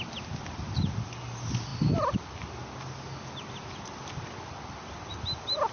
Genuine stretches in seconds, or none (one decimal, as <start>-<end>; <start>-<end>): 0.0-5.7